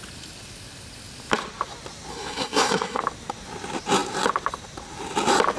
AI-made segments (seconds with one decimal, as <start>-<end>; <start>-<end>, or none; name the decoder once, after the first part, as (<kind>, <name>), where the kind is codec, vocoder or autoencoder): 2.1-3.0 (codec, SNAC)